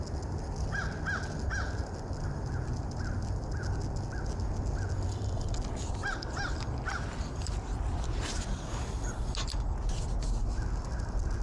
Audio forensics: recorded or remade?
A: recorded